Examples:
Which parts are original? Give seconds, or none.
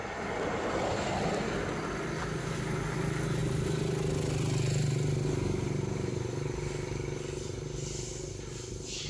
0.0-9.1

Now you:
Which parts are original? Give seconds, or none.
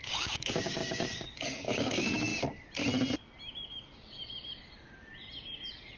2.3-6.0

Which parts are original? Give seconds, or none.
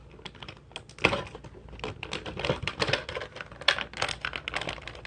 0.0-5.1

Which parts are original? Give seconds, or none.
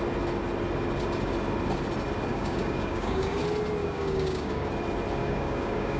0.0-2.3; 3.4-3.8; 4.7-5.2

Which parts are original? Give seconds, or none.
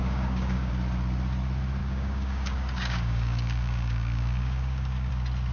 0.7-1.8; 5.1-5.5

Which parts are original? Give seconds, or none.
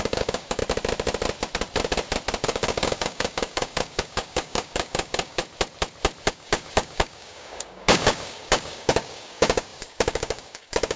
0.6-2.4; 5.4-6.3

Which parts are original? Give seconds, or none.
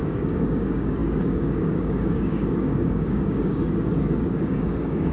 none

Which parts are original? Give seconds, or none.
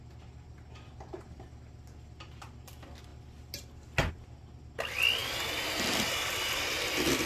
0.0-7.3